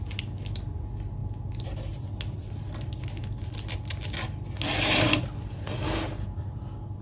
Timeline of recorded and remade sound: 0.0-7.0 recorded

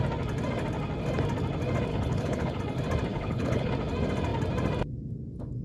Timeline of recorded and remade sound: 0.0-1.9 recorded; 1.9-2.6 remade; 2.6-3.1 recorded; 3.1-3.7 remade; 3.7-5.6 recorded

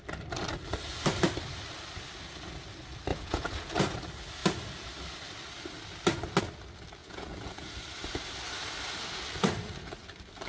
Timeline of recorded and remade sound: 0.0-3.1 recorded; 3.1-3.8 remade; 3.8-7.0 recorded; 7.0-7.7 remade; 7.7-10.5 recorded

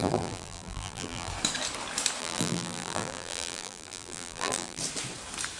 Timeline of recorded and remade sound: 0.0-1.3 remade; 1.3-2.2 recorded; 2.2-4.8 remade; 4.8-5.6 recorded

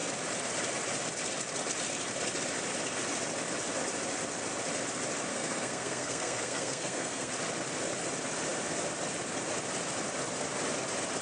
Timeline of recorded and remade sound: 0.0-5.3 recorded; 5.3-7.3 remade; 7.3-11.2 recorded

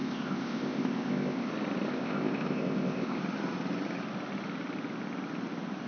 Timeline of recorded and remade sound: 0.0-1.5 remade; 1.5-1.9 recorded; 1.9-3.2 remade; 3.2-5.9 recorded

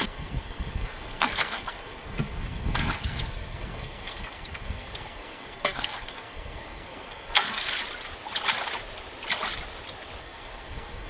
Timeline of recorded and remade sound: 0.0-7.7 remade; 7.7-10.2 recorded; 10.2-11.1 remade

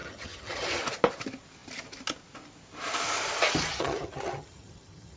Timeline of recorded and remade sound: 0.0-0.8 remade; 0.8-3.7 recorded; 3.7-5.2 remade